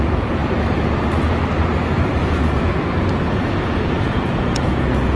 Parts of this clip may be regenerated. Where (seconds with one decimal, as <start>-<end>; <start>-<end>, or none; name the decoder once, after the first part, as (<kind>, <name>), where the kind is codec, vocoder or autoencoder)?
0.0-0.4 (vocoder, Vocos); 2.3-2.7; 3.3-5.2